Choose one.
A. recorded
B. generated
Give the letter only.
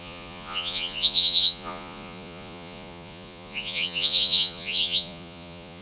B